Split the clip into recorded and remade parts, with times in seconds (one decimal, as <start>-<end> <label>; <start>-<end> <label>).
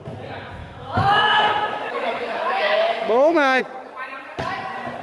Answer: 0.0-0.6 recorded; 0.6-3.6 remade; 3.6-5.0 recorded